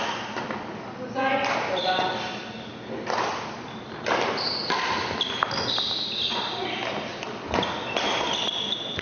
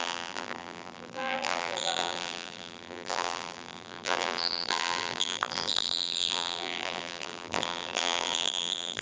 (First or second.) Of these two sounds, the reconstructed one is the second